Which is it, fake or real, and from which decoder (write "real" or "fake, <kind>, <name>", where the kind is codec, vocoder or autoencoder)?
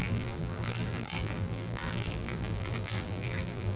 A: fake, vocoder, BigVGAN v2